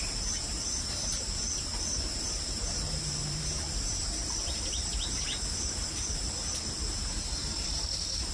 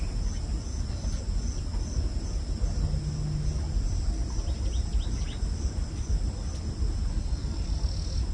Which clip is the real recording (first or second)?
second